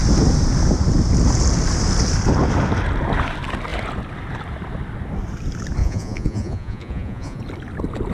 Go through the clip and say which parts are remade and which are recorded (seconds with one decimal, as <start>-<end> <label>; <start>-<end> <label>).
0.0-5.8 recorded; 5.8-7.4 remade; 7.4-8.1 recorded